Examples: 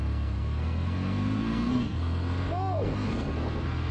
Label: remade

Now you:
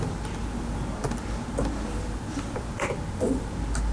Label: recorded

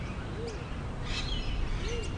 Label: recorded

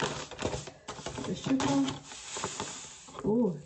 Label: recorded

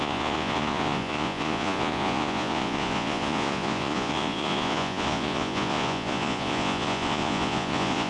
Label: remade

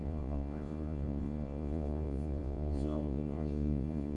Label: remade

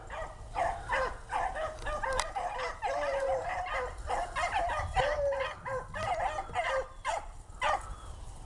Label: recorded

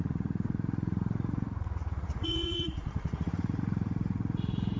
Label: remade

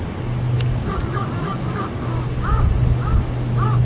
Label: recorded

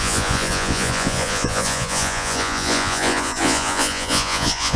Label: remade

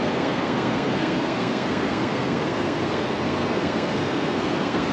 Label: remade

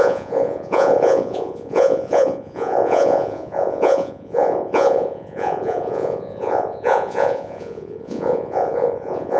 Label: remade